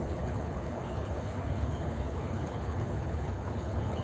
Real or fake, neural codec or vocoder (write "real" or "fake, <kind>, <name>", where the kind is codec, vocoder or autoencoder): fake, codec, HILCodec